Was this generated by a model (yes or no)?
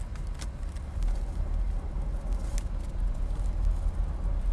no